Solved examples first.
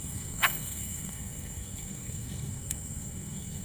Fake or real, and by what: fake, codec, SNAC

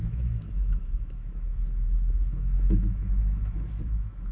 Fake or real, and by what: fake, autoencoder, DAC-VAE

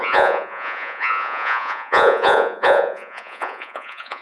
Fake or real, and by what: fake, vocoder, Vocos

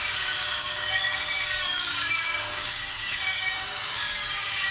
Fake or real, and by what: fake, codec, DAC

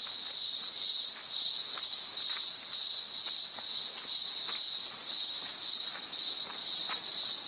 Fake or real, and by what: real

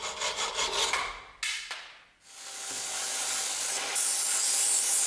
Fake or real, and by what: real